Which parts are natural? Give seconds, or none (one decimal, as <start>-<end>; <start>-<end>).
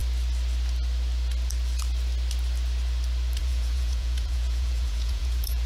0.0-3.4